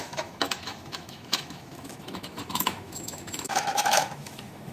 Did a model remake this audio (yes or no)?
yes